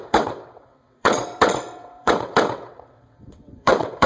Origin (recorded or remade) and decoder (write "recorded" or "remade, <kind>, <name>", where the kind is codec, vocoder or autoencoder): remade, vocoder, WaveNeXt